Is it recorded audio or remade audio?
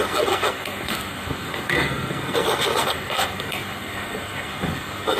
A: remade